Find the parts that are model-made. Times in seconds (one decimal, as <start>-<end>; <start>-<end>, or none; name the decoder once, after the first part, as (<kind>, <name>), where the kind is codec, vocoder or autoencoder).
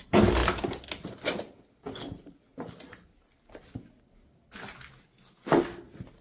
none